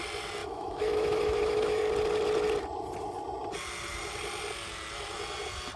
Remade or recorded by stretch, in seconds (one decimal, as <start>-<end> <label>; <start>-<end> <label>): 0.0-0.4 recorded; 0.4-1.8 remade; 1.8-5.8 recorded